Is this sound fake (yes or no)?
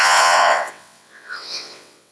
yes